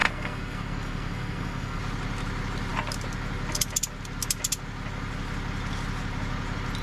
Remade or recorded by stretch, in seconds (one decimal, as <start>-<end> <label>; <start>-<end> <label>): 0.0-1.8 remade; 1.8-6.8 recorded